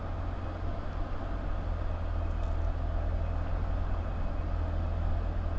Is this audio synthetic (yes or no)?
no